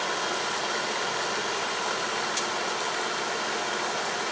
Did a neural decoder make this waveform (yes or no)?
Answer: no